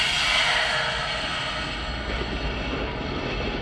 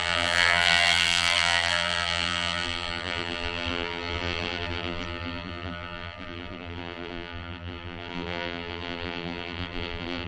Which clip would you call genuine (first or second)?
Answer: first